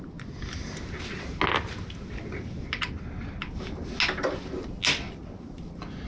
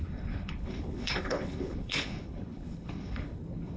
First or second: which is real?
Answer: first